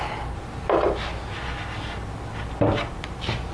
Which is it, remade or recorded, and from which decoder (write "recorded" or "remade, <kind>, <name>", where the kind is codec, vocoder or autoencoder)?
recorded